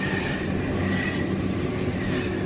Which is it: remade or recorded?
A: recorded